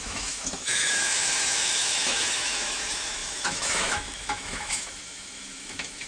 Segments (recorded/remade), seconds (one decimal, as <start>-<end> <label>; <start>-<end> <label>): 0.0-6.1 remade